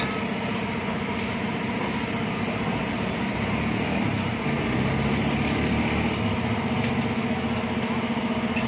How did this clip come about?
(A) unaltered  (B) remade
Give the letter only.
A